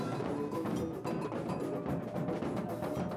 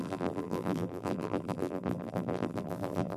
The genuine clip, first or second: first